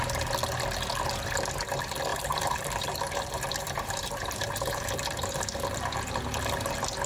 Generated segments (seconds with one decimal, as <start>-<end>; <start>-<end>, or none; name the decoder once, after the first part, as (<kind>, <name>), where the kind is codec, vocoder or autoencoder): 2.1-5.6 (vocoder, BigVGAN v2)